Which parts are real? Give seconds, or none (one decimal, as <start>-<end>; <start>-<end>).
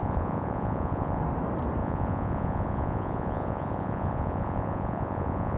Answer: 1.2-1.8